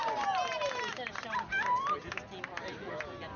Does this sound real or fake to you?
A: real